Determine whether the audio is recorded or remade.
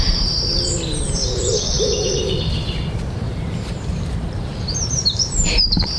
remade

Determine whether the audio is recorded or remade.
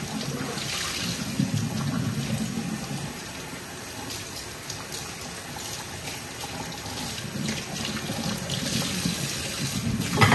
recorded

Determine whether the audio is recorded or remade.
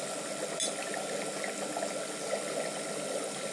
recorded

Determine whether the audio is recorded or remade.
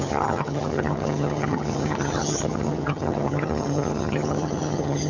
remade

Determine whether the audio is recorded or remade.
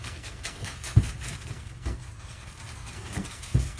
remade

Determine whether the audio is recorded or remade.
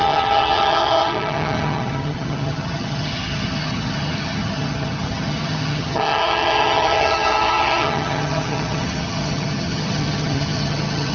remade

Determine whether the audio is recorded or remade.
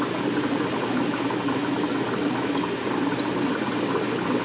recorded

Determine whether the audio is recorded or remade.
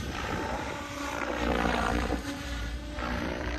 remade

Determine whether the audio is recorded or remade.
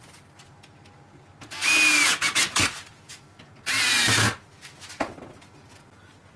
recorded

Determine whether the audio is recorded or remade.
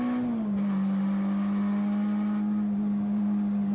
recorded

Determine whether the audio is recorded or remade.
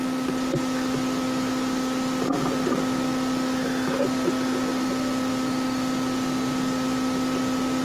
recorded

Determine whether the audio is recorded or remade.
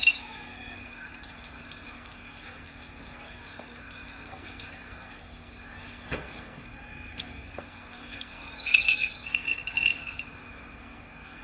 remade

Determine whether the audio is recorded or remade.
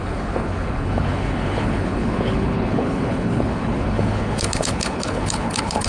remade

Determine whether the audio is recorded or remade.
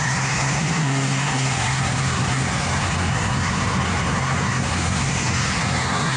remade